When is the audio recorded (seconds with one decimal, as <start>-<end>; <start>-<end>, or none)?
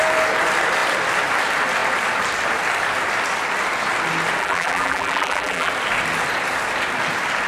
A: 0.0-4.4; 5.7-7.5